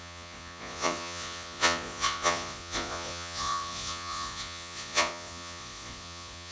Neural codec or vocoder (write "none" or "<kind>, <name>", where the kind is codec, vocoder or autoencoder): vocoder, Vocos